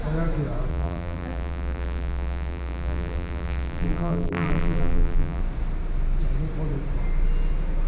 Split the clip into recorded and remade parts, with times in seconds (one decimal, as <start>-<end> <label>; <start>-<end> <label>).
0.0-0.7 recorded; 0.7-5.4 remade; 5.4-7.9 recorded